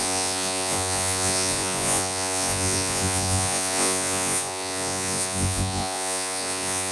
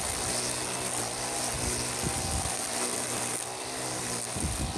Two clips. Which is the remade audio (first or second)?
first